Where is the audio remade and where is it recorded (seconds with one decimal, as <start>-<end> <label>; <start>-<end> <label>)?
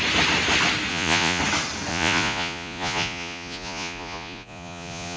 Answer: 0.0-0.9 recorded; 0.9-1.4 remade; 1.4-1.9 recorded; 1.9-5.2 remade